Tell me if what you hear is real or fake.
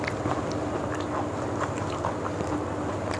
real